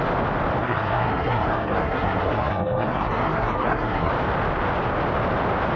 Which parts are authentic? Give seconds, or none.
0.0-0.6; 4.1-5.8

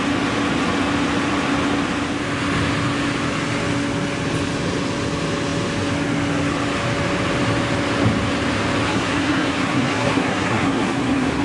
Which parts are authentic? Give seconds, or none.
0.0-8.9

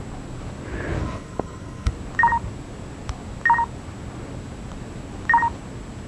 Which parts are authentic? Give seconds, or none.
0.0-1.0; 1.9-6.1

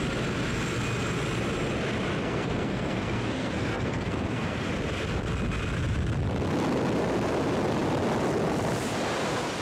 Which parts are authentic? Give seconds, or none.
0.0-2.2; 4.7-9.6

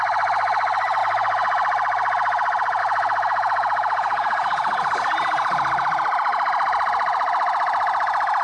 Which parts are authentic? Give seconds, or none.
0.0-8.4

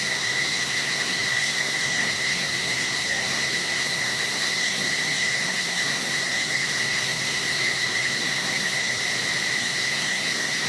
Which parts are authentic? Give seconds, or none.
9.0-9.6